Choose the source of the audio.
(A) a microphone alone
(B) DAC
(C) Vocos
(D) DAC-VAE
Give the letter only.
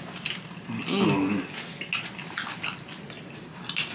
A